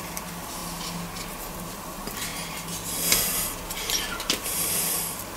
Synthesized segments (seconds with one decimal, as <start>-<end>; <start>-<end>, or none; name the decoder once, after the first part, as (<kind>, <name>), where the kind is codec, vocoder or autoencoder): 0.0-0.6 (vocoder, BigVGAN v2); 1.5-2.3; 4.1-5.4